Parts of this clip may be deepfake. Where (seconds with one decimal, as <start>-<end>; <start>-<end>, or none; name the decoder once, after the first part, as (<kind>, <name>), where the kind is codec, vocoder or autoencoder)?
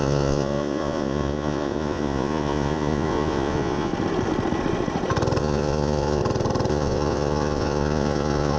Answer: 0.0-3.9 (vocoder, Vocos); 5.4-6.2; 6.7-8.6